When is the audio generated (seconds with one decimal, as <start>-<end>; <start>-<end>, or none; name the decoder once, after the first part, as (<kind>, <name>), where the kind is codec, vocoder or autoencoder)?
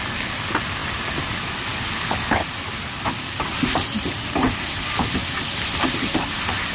none